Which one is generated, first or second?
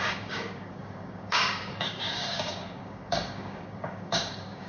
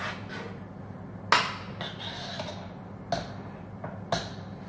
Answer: first